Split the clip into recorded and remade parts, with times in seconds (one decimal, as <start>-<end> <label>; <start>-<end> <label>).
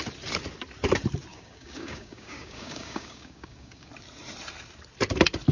0.0-1.3 recorded; 1.3-3.9 remade; 3.9-5.5 recorded